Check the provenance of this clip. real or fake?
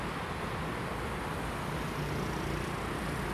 real